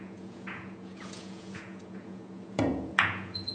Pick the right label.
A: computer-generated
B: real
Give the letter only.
A